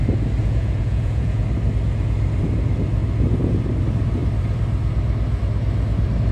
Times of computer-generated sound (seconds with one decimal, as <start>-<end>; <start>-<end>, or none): 0.4-1.4